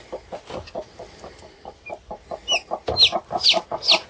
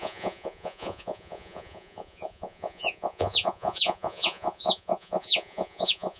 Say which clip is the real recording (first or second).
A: first